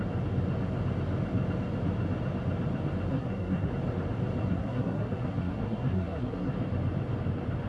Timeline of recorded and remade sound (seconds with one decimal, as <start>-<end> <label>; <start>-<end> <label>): 0.0-3.1 recorded; 3.1-3.7 remade; 3.7-4.5 recorded; 4.5-6.5 remade; 6.5-7.7 recorded